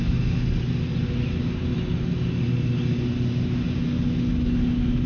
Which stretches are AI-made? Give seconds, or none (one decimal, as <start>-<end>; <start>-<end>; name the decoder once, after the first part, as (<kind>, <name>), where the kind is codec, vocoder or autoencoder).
none